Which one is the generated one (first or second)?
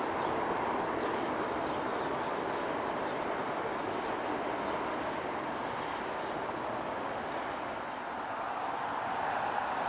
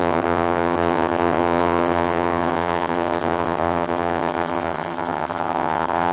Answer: second